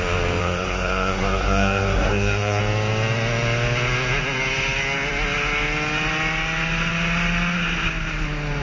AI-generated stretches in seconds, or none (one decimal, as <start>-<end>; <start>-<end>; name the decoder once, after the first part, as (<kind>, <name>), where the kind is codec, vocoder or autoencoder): 0.4-2.6 (codec, SNAC)